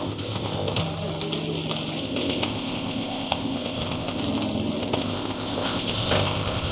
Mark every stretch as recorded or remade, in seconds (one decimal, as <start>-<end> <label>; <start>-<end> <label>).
0.0-0.8 remade; 0.8-2.0 recorded; 2.0-4.2 remade; 4.2-4.8 recorded; 4.8-6.7 remade